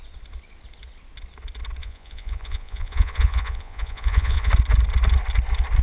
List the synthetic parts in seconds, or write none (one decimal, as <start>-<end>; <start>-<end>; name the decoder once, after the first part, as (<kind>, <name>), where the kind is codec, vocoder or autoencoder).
1.8-4.5 (vocoder, Vocos)